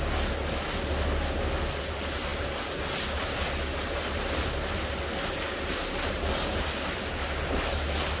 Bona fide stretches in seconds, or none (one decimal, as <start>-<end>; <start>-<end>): 0.0-8.2